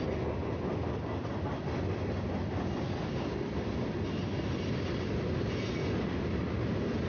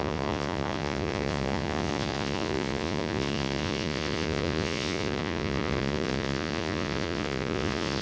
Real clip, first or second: first